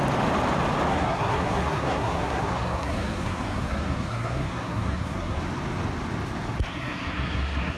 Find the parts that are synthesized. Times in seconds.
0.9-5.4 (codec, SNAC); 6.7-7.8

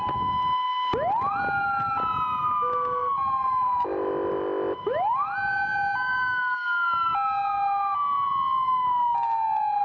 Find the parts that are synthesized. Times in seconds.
none

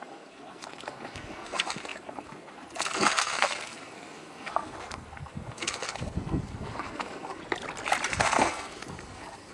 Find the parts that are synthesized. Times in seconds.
0.0-7.4 (codec, SNAC); 8.1-9.5

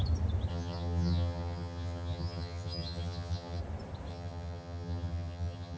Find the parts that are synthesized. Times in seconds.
0.5-3.6 (vocoder, HiFi-GAN); 4.1-5.8

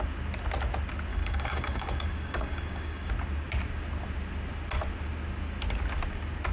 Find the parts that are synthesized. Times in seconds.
1.1-3.1 (codec, DAC)

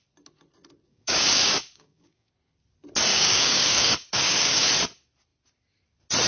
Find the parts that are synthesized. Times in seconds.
0.9-2.3 (codec, DAC); 3.1-4.7

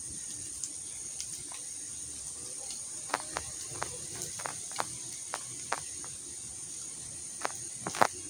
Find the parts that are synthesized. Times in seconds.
none